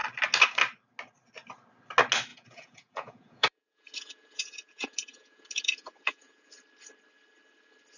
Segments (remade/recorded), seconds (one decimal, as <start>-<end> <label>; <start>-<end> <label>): 0.0-2.3 recorded; 2.3-6.5 remade; 6.5-8.0 recorded